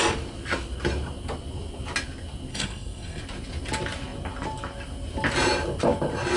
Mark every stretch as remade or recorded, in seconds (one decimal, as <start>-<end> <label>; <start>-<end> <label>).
0.0-2.5 recorded; 2.5-3.2 remade; 3.2-6.4 recorded